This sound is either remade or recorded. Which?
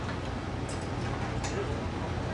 recorded